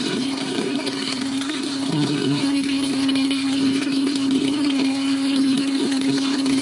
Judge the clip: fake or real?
fake